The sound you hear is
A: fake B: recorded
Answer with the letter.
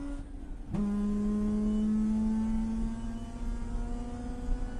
B